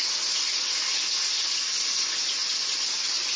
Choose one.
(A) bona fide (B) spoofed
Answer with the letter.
A